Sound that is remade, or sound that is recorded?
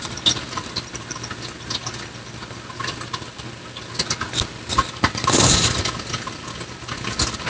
recorded